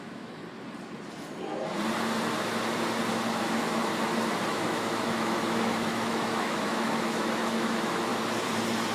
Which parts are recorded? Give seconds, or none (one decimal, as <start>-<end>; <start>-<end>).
0.4-3.4; 3.8-4.5; 8.1-8.9